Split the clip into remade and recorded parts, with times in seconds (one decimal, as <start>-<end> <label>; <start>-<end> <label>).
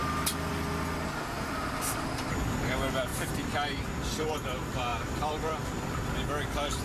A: 0.0-4.9 recorded; 4.9-6.0 remade; 6.0-6.8 recorded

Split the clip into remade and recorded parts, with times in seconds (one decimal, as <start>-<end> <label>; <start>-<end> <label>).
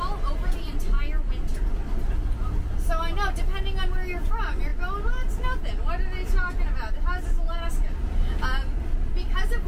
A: 0.0-8.6 recorded; 8.6-9.1 remade; 9.1-9.7 recorded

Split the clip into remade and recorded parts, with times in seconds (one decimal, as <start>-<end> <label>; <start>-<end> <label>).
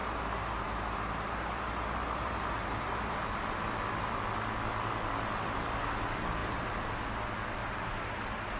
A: 0.0-3.2 remade; 3.2-6.4 recorded; 6.4-6.9 remade; 6.9-7.6 recorded; 7.6-8.1 remade; 8.1-8.6 recorded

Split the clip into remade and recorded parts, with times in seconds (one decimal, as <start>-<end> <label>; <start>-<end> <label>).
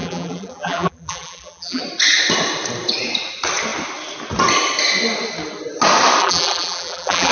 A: 0.0-1.8 remade; 1.8-6.2 recorded; 6.2-7.3 remade